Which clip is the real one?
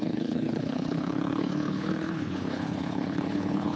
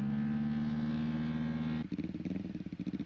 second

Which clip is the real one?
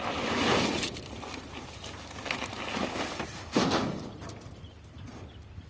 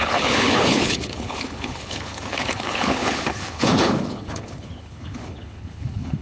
first